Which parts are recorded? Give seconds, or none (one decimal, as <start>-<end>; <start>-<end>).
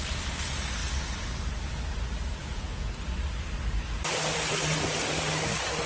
0.0-2.4; 2.9-5.9